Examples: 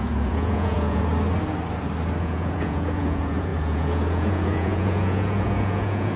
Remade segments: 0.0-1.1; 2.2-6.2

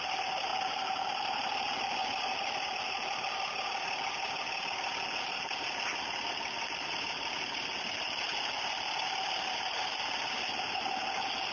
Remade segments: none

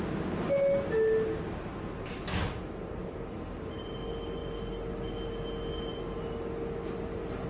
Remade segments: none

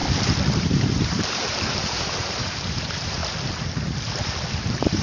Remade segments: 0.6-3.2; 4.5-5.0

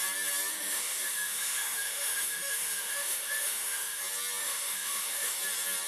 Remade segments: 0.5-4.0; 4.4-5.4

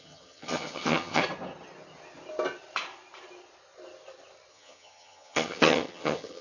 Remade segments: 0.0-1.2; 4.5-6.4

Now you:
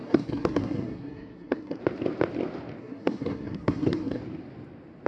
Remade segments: 0.0-1.8; 2.8-4.2

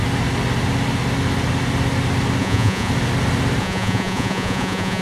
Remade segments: 2.4-2.9; 3.6-5.0